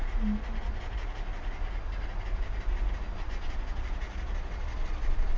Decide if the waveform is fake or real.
real